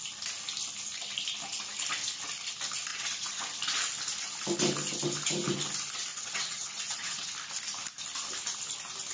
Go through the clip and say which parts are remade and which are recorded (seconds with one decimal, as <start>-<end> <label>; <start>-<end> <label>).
0.0-2.9 recorded; 2.9-3.4 remade; 3.4-6.1 recorded; 6.1-7.3 remade; 7.3-9.1 recorded